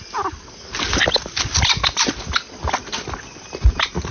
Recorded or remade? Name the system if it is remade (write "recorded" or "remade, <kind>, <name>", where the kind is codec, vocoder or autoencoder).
recorded